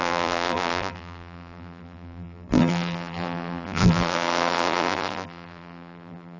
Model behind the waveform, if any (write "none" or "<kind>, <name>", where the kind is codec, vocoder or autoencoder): vocoder, BigVGAN v2